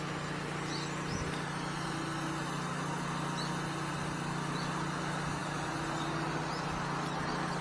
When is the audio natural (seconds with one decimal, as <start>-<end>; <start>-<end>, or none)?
0.0-7.6